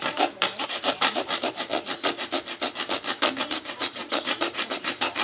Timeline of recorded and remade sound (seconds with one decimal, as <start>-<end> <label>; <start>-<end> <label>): 0.0-1.7 remade; 1.7-3.4 recorded; 3.4-5.2 remade